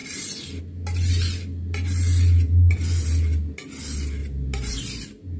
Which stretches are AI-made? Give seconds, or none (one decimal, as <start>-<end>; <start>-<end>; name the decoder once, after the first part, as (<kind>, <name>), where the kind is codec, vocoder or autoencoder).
4.2-4.8 (vocoder, BigVGAN v2)